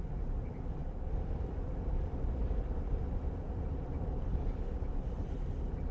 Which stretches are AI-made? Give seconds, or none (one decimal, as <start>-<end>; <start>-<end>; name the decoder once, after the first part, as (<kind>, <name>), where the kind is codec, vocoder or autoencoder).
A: none

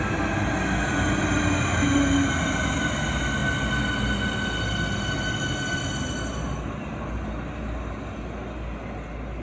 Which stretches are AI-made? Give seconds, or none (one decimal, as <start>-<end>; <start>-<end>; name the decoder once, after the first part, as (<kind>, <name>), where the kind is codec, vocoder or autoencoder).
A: none

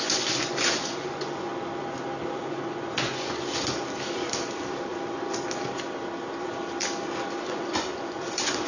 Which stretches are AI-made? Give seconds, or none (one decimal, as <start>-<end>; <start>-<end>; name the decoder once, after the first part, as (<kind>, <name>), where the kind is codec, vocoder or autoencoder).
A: 0.0-1.5 (vocoder, Vocos); 2.4-3.5; 7.4-8.7

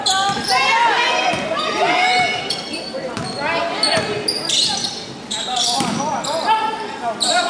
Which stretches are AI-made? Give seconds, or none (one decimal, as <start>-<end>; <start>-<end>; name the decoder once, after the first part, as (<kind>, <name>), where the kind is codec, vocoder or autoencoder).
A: none

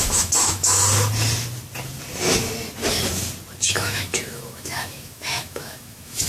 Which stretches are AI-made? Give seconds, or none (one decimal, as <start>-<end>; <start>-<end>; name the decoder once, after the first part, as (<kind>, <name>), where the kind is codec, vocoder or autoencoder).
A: 0.0-0.8 (autoencoder, DAC-VAE); 3.7-6.3

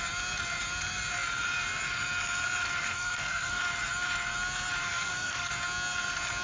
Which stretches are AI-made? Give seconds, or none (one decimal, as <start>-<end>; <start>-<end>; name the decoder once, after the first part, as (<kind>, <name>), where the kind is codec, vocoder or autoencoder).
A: 2.8-3.6 (codec, SNAC); 4.8-5.5

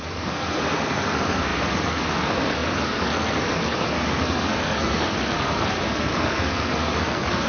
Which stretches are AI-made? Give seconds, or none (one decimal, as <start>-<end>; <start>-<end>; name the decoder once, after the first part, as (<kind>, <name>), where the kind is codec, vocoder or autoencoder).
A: 0.0-7.5 (codec, SNAC)

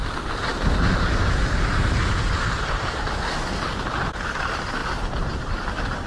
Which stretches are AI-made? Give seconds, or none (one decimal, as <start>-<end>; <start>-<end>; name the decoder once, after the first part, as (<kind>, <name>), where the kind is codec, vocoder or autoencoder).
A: none